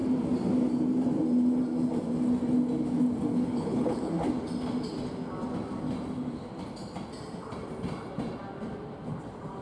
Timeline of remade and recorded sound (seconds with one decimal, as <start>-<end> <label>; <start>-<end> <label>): 0.0-3.3 recorded; 3.3-4.1 remade; 4.1-9.6 recorded